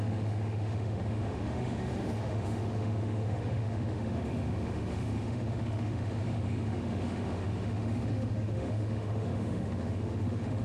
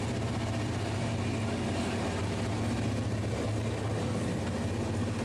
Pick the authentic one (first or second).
second